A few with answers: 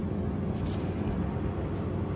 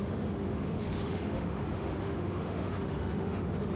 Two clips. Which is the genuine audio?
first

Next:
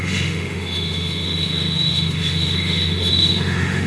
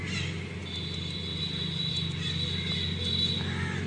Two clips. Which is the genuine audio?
second